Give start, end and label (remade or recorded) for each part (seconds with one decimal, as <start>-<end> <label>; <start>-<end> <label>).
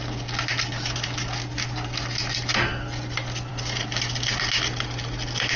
0.0-5.6 recorded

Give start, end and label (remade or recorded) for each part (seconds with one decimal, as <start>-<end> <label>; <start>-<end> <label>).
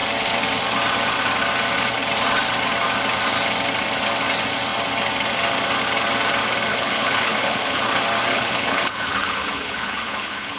0.0-6.7 recorded; 6.7-7.8 remade; 7.8-8.3 recorded; 8.3-10.6 remade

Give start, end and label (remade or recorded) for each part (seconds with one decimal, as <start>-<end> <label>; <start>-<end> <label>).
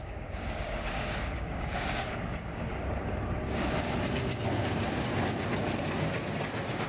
0.0-2.7 remade; 2.7-6.9 recorded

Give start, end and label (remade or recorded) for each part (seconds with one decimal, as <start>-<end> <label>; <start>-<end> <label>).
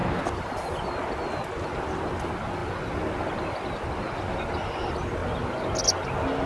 0.0-6.5 recorded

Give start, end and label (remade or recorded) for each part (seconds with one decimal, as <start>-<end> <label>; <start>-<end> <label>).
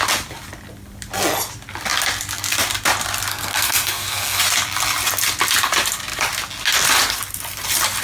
0.0-3.3 recorded; 3.3-4.4 remade; 4.4-8.0 recorded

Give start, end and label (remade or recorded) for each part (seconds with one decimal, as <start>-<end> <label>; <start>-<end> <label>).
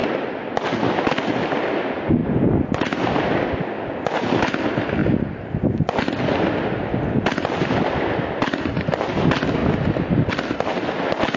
0.0-11.4 recorded